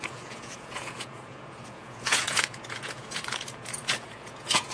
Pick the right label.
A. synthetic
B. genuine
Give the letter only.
A